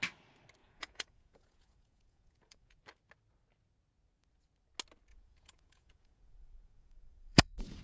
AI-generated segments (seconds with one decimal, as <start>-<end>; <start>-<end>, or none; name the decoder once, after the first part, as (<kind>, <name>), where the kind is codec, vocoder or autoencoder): 0.6-2.8 (vocoder, Vocos); 5.1-7.8